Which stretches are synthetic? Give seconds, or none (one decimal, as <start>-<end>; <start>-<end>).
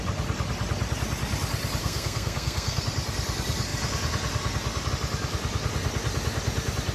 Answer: 1.8-2.8